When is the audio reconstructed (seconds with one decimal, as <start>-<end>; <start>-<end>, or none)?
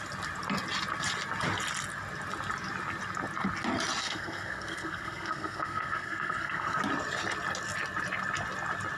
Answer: 4.0-6.8